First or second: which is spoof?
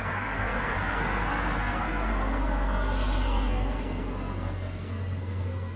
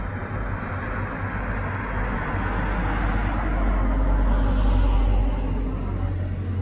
first